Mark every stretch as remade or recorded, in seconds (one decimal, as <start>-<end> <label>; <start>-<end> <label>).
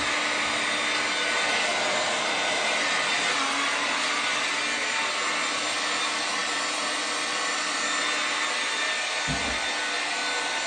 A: 0.0-10.7 recorded